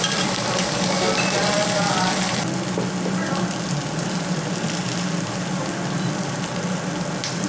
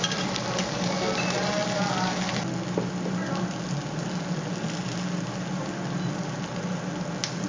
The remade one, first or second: first